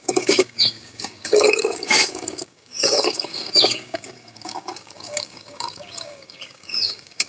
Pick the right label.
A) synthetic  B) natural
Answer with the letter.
A